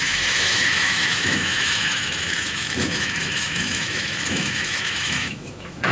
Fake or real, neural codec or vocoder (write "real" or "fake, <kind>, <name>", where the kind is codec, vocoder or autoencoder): fake, autoencoder, DAC-VAE